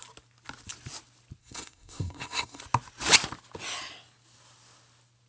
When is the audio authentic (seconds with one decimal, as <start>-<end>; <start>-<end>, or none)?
0.0-1.4; 2.6-5.3

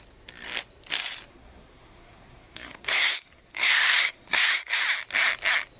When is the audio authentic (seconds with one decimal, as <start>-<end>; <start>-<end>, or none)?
0.0-1.3; 4.8-5.8

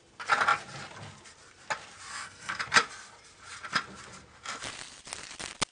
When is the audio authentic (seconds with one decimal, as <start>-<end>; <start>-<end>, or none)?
0.0-2.1; 2.6-5.7

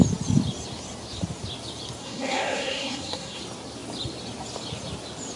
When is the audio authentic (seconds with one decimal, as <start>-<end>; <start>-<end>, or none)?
0.0-2.0; 3.4-5.4

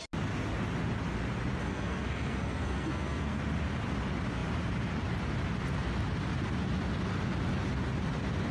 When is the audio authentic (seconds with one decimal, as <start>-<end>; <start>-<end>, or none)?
0.0-1.6; 3.4-8.5